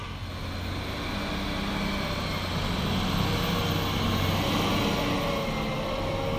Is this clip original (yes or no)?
yes